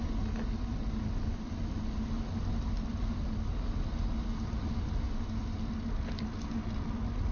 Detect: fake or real real